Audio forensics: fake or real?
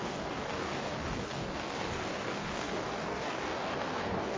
fake